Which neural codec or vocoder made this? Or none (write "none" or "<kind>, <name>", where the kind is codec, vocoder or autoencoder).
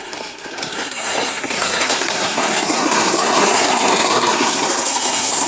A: codec, SNAC